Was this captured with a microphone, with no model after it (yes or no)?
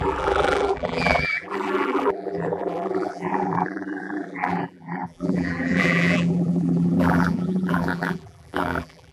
no